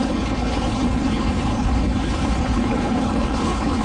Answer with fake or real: fake